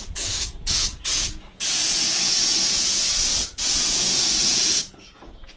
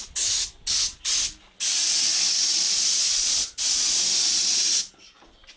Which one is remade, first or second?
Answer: first